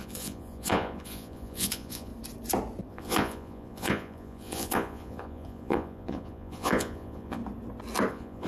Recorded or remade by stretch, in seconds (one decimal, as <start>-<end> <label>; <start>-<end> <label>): 0.0-2.1 remade; 2.1-2.9 recorded; 2.9-7.4 remade; 7.4-8.1 recorded; 8.1-8.5 remade